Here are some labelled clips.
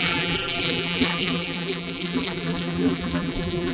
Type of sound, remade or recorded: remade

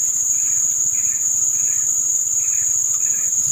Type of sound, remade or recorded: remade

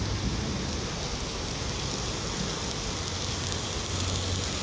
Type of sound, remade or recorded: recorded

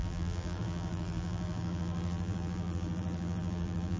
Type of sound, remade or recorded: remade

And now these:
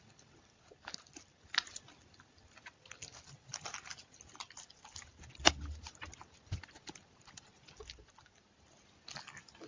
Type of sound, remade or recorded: recorded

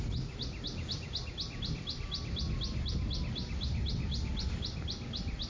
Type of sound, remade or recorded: recorded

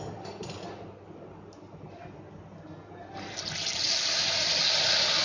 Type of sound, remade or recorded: recorded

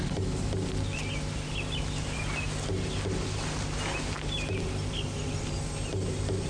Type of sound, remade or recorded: recorded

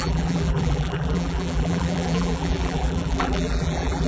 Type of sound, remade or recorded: remade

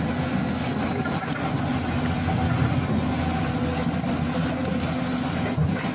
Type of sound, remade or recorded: recorded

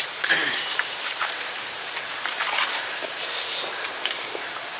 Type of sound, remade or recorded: remade